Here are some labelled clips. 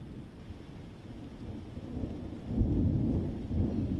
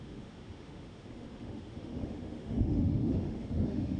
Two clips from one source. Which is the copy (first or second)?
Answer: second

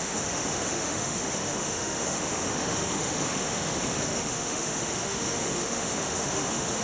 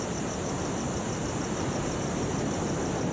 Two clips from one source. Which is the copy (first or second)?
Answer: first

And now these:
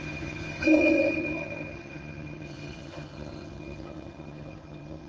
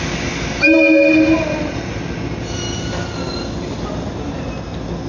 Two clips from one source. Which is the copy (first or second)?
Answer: first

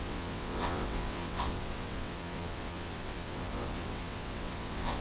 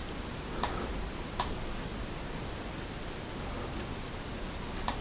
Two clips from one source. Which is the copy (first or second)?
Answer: first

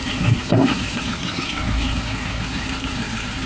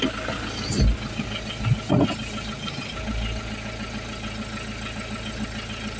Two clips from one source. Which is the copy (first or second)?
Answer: first